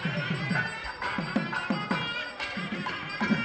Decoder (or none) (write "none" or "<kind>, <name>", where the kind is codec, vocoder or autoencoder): none